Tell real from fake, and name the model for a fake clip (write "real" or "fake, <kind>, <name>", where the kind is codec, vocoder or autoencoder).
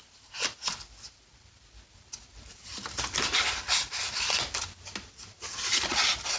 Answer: real